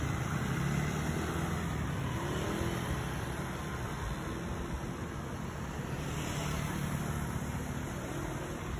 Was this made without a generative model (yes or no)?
yes